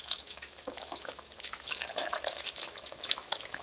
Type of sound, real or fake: fake